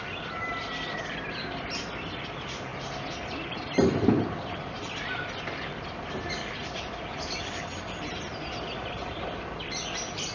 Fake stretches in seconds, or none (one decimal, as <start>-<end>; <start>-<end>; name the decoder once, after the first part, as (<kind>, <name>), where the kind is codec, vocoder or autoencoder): none